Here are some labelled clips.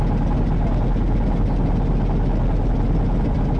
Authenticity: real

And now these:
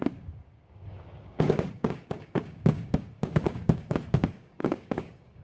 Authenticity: fake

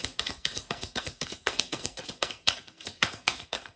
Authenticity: fake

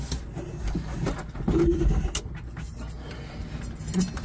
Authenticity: real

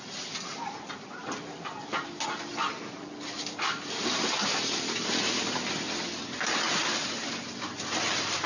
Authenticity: real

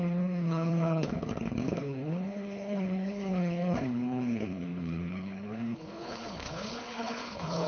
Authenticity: fake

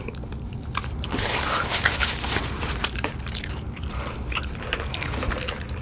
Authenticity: fake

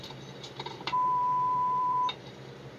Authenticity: fake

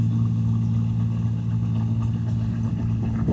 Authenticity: real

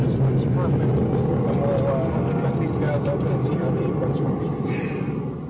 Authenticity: real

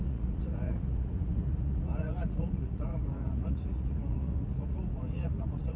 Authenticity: fake